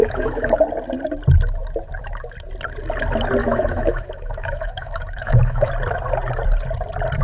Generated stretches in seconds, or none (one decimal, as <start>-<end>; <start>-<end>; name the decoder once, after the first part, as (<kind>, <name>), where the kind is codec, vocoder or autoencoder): 0.0-0.6 (autoencoder, DAC-VAE); 3.4-5.7